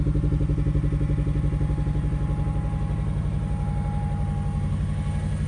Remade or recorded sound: recorded